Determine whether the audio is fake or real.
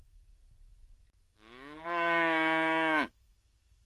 fake